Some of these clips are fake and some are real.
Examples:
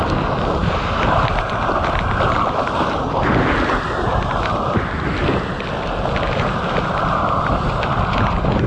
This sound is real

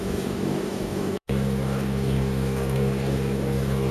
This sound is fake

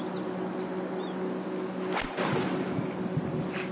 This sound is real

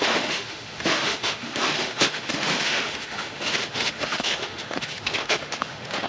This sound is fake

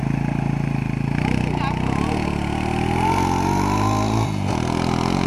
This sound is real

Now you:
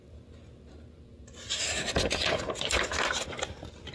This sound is real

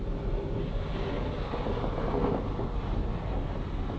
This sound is real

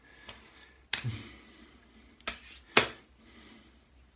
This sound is real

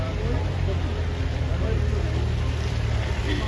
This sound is real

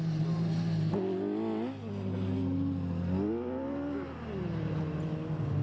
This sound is real